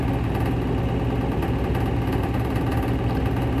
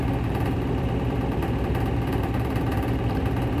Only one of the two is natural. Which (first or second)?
first